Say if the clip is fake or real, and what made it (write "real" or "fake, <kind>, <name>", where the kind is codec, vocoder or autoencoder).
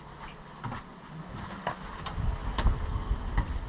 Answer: real